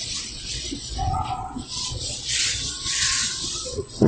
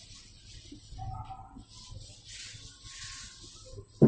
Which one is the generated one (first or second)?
first